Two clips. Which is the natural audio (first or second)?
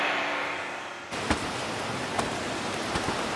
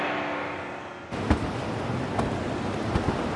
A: second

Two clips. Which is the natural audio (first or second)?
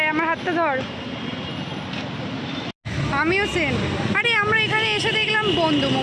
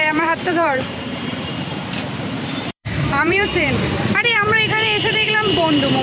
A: first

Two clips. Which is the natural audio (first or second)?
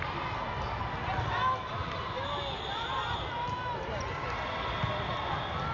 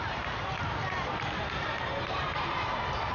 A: first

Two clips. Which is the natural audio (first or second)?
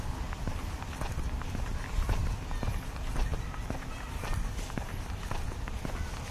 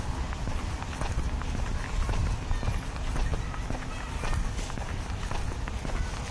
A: second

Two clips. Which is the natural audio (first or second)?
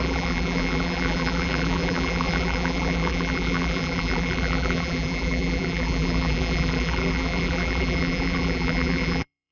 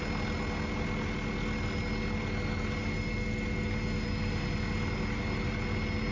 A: second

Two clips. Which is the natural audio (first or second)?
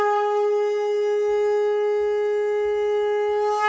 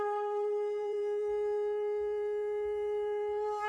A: first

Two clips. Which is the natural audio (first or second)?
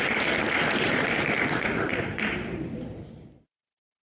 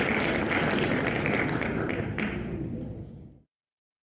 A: second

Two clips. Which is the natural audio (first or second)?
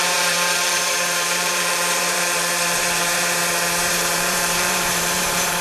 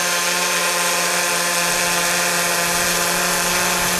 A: second